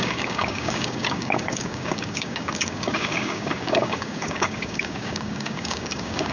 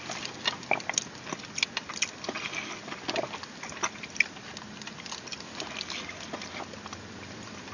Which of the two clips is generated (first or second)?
first